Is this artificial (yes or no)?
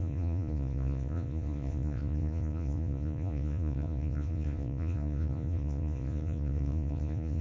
yes